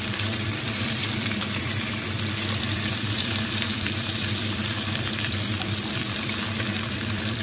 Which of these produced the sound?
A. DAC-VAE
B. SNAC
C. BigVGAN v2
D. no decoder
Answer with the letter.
C